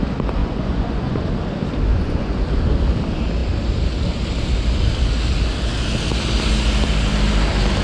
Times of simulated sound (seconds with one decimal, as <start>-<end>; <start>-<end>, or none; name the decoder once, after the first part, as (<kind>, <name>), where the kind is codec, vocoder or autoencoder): 0.4-1.3 (vocoder, Vocos); 1.9-2.5